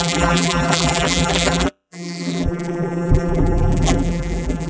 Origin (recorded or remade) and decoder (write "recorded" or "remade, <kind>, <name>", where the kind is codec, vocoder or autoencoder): remade, vocoder, BigVGAN v2